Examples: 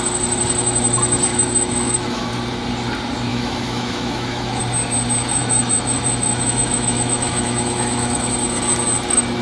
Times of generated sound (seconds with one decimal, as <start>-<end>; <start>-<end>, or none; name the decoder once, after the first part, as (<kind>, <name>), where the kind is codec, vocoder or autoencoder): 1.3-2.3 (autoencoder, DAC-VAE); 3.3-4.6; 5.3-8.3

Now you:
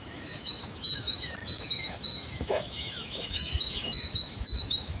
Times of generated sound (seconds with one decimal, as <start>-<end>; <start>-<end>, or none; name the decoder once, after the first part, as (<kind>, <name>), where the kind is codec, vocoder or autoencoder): 0.0-5.0 (autoencoder, DAC-VAE)

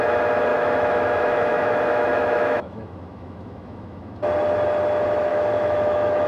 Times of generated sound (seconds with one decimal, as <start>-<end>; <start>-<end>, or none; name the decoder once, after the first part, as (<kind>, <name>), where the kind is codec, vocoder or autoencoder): 0.5-4.2 (autoencoder, DAC-VAE); 5.3-6.3

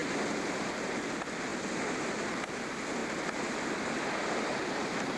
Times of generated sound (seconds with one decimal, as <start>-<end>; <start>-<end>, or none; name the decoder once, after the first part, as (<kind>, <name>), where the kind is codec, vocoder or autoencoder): none